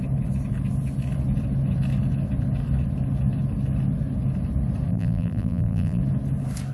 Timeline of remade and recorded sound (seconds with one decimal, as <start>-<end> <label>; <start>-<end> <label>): 0.0-4.9 recorded; 4.9-6.0 remade; 6.0-6.7 recorded